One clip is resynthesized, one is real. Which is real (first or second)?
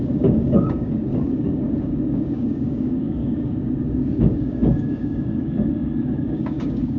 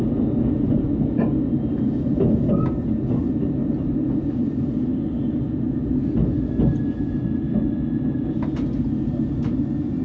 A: second